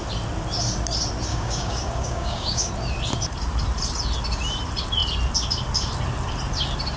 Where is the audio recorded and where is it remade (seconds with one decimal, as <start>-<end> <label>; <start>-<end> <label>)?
0.0-1.3 recorded; 1.3-2.7 remade; 2.7-7.0 recorded